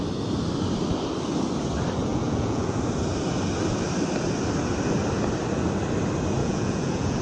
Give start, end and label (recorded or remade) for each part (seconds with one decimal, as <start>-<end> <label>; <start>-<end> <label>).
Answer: 0.0-2.1 recorded; 2.1-2.8 remade; 2.8-6.4 recorded; 6.4-7.2 remade